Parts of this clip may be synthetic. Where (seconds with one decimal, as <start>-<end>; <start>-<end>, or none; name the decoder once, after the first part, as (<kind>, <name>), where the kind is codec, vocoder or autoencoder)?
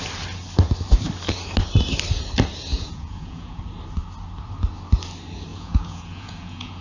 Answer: 2.7-3.6 (vocoder, Vocos); 5.5-6.8